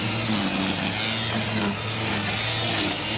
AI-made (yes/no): no